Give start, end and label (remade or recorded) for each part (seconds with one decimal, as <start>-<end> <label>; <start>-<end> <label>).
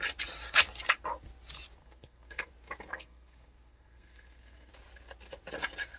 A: 0.0-1.8 recorded; 1.8-2.5 remade; 2.5-2.9 recorded; 2.9-4.7 remade; 4.7-6.0 recorded